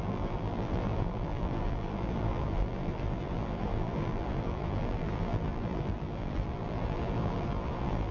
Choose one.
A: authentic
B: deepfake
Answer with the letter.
B